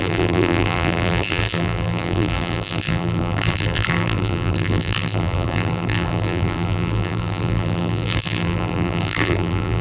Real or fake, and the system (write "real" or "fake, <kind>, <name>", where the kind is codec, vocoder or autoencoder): fake, vocoder, BigVGAN v2